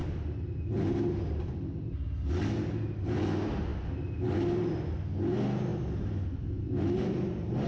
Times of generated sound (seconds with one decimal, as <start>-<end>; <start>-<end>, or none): none

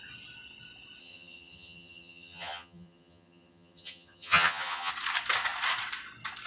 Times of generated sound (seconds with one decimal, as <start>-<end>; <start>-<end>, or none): 1.0-4.9